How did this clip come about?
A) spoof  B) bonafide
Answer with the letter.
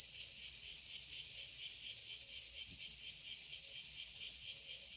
A